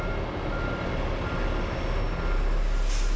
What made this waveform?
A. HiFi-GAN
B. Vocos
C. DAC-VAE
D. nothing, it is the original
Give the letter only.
D